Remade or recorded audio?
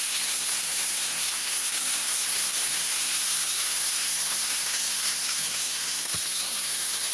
remade